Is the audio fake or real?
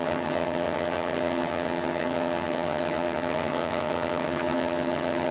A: fake